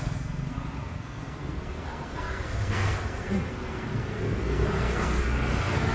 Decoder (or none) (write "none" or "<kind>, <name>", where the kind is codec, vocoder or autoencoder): codec, SNAC